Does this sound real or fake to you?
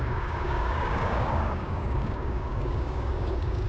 fake